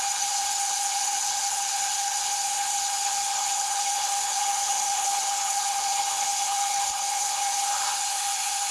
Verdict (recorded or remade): remade